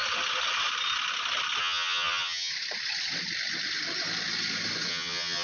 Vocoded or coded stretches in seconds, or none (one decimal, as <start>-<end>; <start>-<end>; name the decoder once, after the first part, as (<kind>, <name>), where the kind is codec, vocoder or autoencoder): 1.6-2.5 (vocoder, HiFi-GAN); 4.9-5.4